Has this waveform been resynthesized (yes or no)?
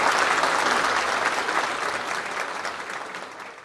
no